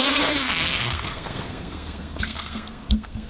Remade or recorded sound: remade